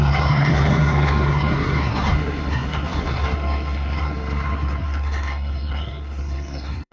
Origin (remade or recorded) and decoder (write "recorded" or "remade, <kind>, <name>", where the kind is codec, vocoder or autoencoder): remade, codec, SNAC